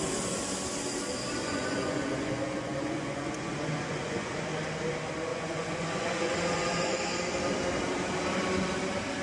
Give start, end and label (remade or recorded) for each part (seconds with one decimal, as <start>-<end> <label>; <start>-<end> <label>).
0.0-1.4 recorded; 1.4-4.5 remade; 4.5-5.3 recorded; 5.3-7.0 remade; 7.0-9.2 recorded